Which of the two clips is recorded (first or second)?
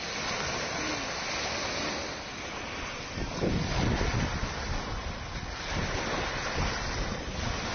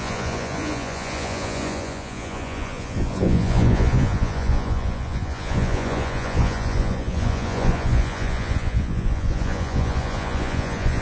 first